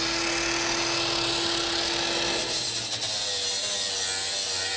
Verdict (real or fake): real